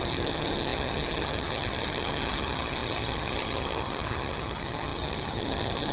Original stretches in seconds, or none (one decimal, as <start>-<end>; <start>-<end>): none